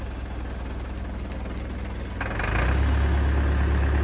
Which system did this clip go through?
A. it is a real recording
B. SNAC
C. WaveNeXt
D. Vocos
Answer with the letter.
A